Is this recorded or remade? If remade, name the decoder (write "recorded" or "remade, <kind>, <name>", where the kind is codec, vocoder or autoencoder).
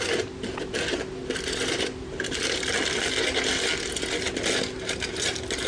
recorded